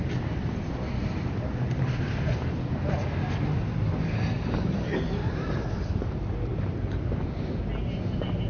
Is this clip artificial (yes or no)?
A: no